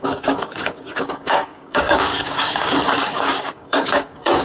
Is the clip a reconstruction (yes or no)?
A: yes